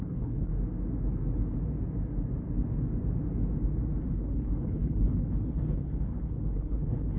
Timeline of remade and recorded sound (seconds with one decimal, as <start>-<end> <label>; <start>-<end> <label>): 0.0-0.5 remade; 0.5-4.1 recorded; 4.1-7.2 remade